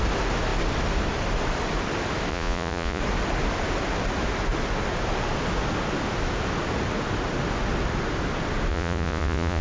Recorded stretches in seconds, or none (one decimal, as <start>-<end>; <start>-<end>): 0.0-2.3; 3.0-8.7